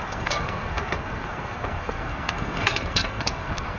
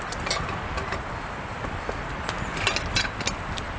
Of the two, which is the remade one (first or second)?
first